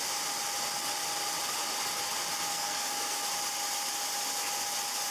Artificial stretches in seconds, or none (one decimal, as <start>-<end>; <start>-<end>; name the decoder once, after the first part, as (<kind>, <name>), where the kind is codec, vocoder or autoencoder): 2.5-3.2 (codec, SNAC)